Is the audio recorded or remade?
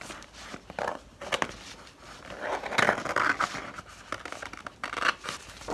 recorded